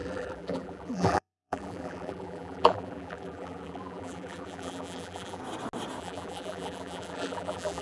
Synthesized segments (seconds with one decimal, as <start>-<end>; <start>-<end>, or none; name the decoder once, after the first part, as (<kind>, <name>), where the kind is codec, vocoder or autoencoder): 0.0-5.4 (vocoder, BigVGAN v2); 6.0-7.8